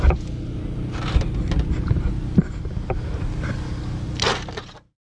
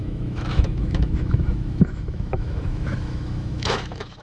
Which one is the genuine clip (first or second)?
first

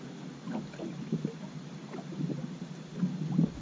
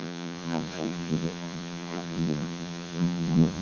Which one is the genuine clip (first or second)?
first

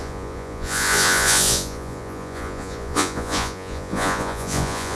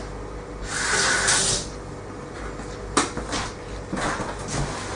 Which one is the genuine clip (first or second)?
second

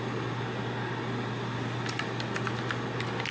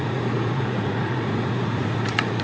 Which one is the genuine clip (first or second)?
first